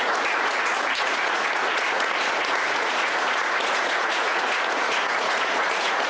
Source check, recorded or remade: remade